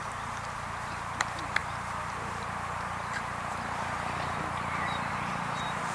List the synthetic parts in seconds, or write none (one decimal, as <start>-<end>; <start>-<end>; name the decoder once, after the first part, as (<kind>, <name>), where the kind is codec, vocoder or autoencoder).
0.0-5.9 (vocoder, BigVGAN v2)